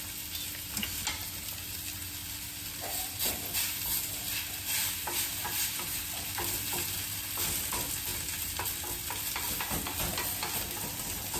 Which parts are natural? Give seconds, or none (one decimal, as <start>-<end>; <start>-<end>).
0.0-11.4